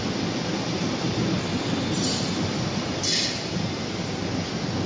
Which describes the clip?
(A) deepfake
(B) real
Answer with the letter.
B